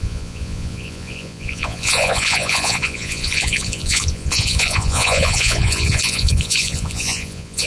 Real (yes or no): no